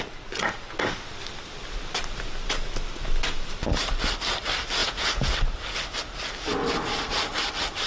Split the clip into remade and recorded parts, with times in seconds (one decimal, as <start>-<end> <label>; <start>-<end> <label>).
0.0-4.8 recorded; 4.8-5.3 remade; 5.3-7.9 recorded